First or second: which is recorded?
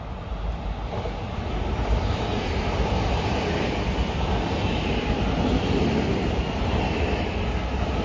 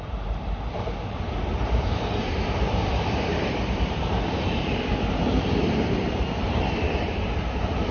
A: first